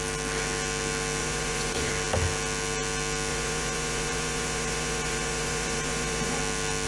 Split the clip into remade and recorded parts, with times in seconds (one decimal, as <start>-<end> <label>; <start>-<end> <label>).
0.0-1.2 recorded; 1.2-1.9 remade; 1.9-3.3 recorded; 3.3-6.4 remade; 6.4-6.9 recorded